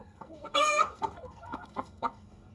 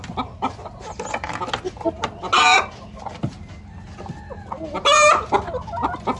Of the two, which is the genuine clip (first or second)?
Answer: second